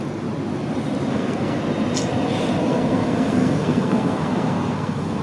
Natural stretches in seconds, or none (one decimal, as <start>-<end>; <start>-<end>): 0.0-1.1; 1.6-2.6